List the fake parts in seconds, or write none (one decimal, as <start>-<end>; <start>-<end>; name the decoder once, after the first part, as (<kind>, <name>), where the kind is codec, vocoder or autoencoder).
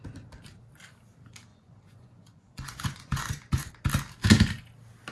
1.5-3.7 (vocoder, Vocos)